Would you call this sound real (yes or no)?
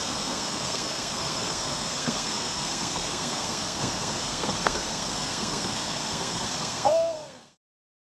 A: no